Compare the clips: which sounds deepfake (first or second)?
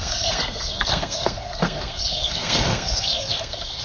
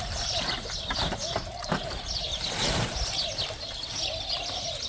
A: first